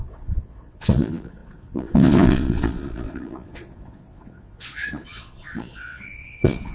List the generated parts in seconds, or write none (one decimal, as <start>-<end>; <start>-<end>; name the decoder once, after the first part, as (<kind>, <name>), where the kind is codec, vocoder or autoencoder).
0.0-6.7 (vocoder, Vocos)